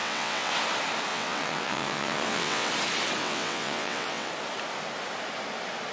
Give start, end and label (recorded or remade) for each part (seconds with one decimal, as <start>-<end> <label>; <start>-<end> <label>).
0.0-0.5 remade; 0.5-1.1 recorded; 1.1-2.7 remade; 2.7-3.2 recorded; 3.2-4.3 remade; 4.3-5.9 recorded